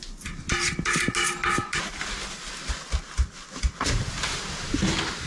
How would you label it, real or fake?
real